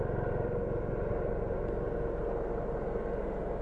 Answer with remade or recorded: recorded